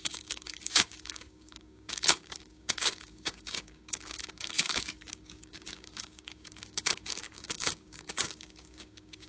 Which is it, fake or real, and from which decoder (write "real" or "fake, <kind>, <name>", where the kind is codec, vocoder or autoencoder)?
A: fake, codec, DAC